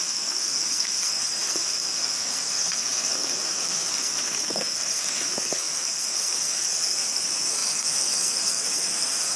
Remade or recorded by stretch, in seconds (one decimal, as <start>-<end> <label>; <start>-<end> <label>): 0.0-9.4 remade